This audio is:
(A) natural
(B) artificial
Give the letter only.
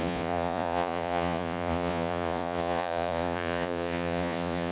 B